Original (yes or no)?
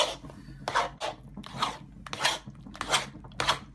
yes